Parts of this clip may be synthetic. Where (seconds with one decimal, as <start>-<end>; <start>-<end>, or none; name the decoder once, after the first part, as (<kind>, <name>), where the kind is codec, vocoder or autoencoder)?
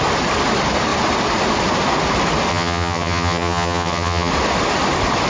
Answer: 2.5-4.3 (vocoder, HiFi-GAN)